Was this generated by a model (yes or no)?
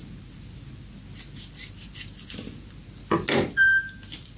no